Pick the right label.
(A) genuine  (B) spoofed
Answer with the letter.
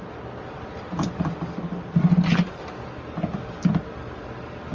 A